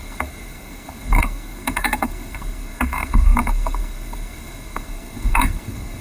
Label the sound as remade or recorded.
remade